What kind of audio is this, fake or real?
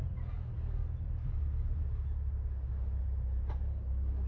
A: real